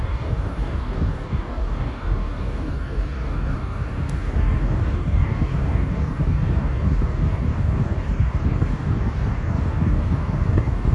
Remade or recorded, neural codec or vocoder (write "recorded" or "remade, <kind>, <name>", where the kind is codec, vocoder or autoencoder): remade, codec, DAC